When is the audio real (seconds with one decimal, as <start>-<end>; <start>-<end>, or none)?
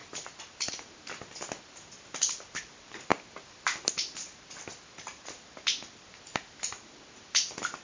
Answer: 0.0-7.8